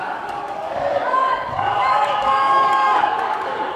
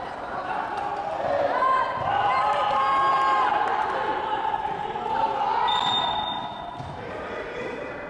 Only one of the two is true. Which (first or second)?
second